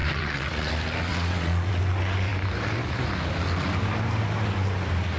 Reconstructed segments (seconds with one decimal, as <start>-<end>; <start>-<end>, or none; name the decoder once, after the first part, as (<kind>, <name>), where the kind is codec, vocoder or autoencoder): 0.0-0.7 (vocoder, WaveNeXt); 1.1-1.8